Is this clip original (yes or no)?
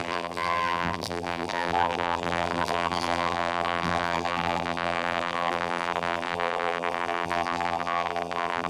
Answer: no